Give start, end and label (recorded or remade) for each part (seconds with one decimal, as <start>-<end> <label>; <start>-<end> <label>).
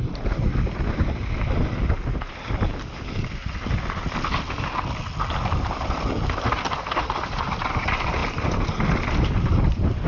0.0-10.1 recorded